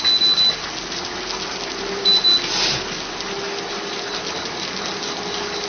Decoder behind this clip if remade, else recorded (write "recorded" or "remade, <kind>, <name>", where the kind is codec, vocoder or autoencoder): recorded